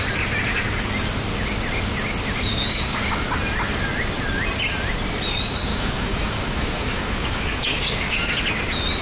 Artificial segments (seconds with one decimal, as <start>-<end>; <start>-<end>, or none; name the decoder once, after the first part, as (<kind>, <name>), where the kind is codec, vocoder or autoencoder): 2.5-3.0 (codec, DAC); 5.7-8.3